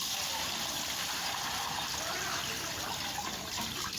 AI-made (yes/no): yes